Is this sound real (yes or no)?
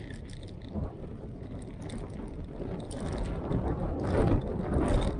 yes